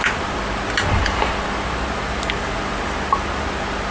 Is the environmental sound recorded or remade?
recorded